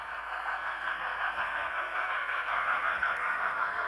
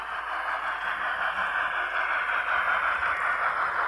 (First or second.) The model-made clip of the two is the first